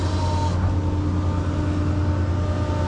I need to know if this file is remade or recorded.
recorded